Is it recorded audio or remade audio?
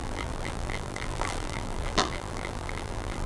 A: remade